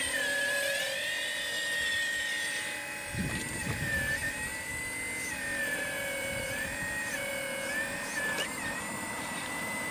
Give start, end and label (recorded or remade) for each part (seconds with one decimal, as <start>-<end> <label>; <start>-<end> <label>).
0.0-4.7 remade; 4.7-5.6 recorded; 5.6-7.3 remade; 7.3-9.1 recorded; 9.1-9.9 remade